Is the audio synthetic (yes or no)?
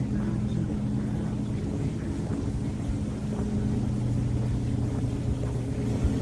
no